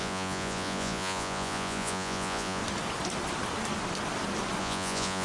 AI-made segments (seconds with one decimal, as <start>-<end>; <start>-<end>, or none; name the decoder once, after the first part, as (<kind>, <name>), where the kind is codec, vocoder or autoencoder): 0.0-2.6 (vocoder, Vocos); 4.6-5.2